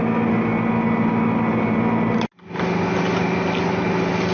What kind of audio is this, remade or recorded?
recorded